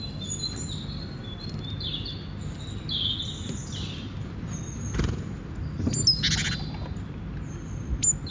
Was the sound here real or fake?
real